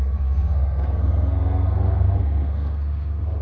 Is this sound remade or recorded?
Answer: remade